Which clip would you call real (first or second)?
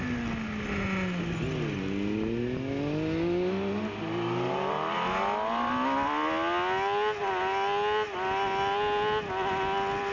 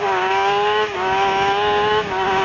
first